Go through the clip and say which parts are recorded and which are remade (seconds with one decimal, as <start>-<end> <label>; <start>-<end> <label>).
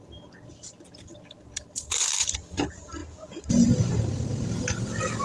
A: 0.0-5.2 recorded